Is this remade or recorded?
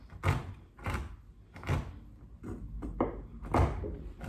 recorded